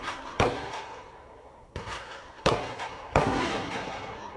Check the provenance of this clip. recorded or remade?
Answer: remade